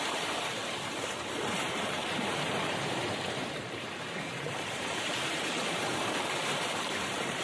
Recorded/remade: remade